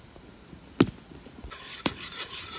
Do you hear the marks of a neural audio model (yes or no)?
no